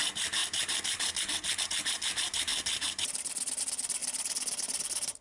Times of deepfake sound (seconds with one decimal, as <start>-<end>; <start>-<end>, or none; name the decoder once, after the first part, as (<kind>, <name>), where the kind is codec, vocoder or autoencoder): 0.0-0.4 (vocoder, BigVGAN v2); 1.6-4.0; 4.8-5.2